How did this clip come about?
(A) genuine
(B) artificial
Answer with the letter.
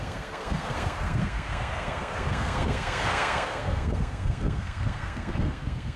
B